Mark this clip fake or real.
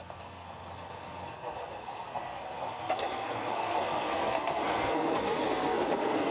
fake